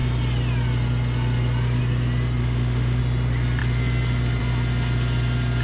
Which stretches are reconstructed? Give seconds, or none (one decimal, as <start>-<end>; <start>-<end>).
2.4-3.0